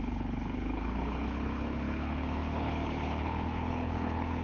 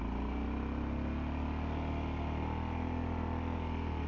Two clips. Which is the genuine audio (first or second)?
second